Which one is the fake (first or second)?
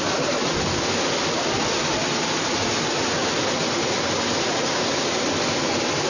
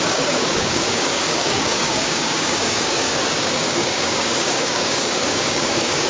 second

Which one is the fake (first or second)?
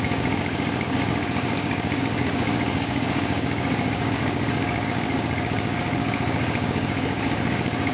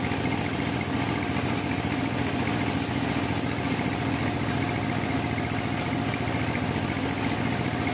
first